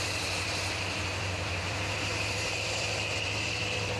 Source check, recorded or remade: remade